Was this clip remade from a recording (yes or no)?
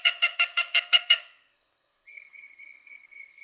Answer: yes